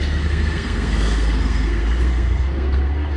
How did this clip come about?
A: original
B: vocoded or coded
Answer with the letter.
B